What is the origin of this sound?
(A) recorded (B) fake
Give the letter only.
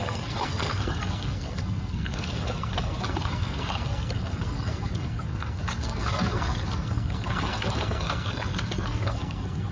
B